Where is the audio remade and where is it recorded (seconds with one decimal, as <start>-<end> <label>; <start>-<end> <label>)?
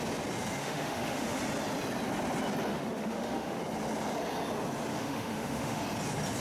0.0-0.6 recorded; 0.6-1.4 remade; 1.4-2.7 recorded; 2.7-3.6 remade; 3.6-4.9 recorded; 4.9-5.8 remade; 5.8-6.4 recorded